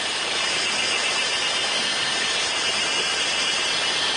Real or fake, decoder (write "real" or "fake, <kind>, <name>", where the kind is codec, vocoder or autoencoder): real